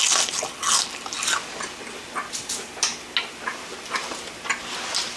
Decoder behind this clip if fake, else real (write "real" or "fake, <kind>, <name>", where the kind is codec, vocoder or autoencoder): real